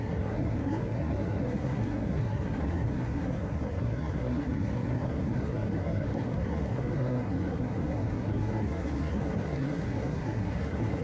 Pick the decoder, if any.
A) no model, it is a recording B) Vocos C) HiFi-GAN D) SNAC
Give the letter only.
D